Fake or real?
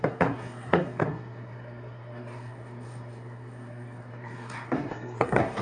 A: fake